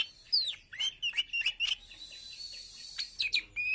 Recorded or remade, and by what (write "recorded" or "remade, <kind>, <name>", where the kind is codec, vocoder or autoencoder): recorded